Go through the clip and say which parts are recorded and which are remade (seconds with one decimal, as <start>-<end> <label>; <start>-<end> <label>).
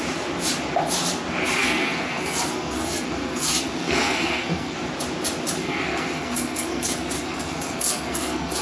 0.0-1.6 recorded; 1.6-4.9 remade; 4.9-5.6 recorded; 5.6-8.6 remade